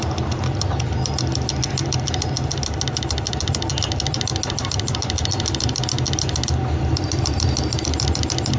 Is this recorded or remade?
recorded